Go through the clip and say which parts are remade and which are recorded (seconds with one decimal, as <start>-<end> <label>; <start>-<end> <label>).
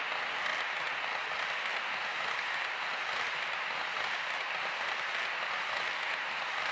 0.0-6.7 recorded